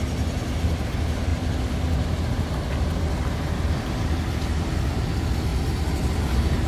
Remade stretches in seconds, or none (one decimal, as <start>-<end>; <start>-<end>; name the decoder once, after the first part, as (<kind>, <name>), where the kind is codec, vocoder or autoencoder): none